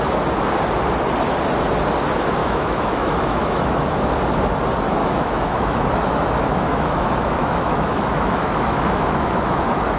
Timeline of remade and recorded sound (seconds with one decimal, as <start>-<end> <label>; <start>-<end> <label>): 0.0-2.4 recorded; 2.4-4.1 remade; 4.1-5.0 recorded; 5.0-10.0 remade